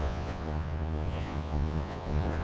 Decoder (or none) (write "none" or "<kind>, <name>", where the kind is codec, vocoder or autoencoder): vocoder, Vocos